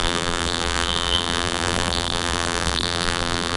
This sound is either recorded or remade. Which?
remade